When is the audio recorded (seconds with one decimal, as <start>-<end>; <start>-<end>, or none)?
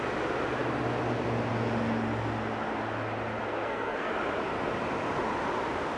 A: 0.0-3.4; 4.1-6.0